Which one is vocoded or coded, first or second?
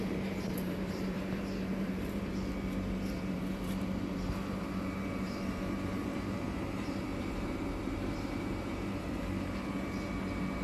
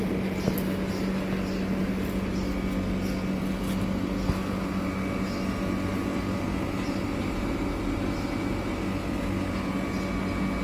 first